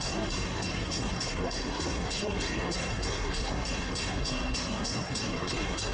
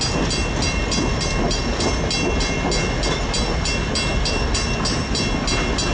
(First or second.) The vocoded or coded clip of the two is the first